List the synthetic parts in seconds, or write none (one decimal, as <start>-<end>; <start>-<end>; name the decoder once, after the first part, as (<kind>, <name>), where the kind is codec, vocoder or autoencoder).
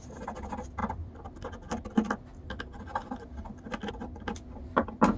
0.8-3.9 (vocoder, BigVGAN v2)